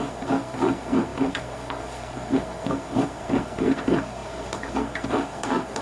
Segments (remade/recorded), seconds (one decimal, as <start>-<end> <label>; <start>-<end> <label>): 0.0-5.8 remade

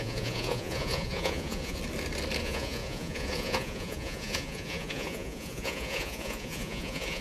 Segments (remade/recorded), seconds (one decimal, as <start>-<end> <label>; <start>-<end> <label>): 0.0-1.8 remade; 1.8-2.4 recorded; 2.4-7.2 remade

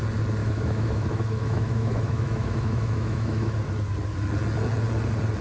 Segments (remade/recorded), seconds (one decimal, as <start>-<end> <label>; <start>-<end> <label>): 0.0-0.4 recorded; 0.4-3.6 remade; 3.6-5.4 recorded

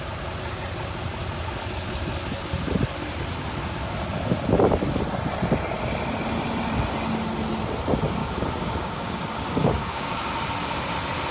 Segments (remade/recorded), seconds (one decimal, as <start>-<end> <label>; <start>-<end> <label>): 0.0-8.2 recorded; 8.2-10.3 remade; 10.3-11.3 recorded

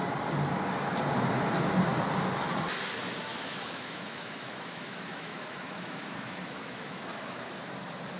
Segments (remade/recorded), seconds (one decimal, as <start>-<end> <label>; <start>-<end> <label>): 0.0-3.3 recorded; 3.3-7.5 remade; 7.5-8.2 recorded